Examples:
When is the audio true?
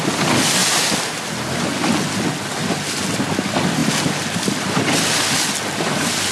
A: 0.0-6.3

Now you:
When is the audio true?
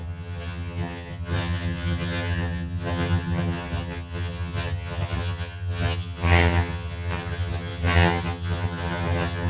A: none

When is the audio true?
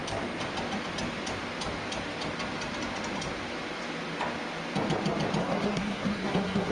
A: 0.0-5.4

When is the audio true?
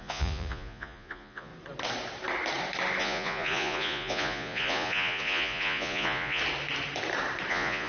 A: 1.5-3.0; 6.4-7.5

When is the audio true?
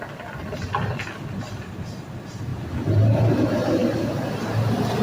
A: 0.0-5.0